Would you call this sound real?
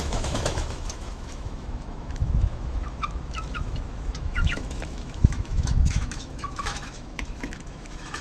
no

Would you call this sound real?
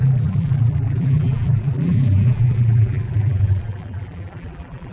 no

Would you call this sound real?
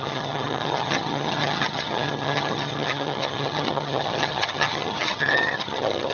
no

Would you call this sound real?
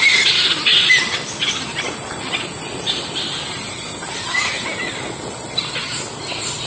yes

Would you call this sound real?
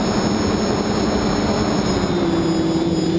yes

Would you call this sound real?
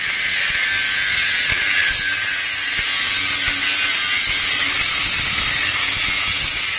yes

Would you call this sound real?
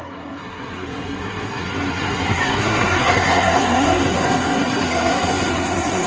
no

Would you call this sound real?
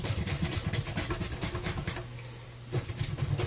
yes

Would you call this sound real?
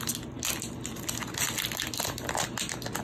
yes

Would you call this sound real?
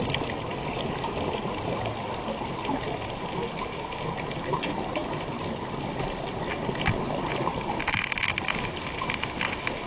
yes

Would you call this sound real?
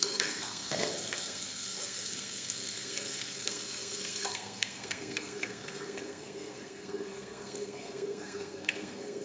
no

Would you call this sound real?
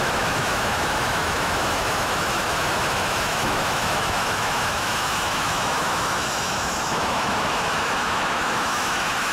no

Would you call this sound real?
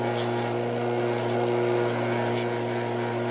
yes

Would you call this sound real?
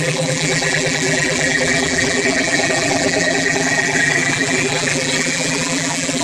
no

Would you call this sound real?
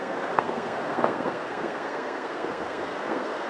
no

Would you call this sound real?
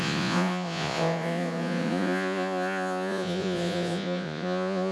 no